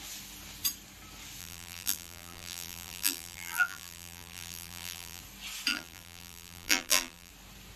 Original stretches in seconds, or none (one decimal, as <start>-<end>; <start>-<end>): 0.0-1.4; 5.2-5.7; 7.3-7.8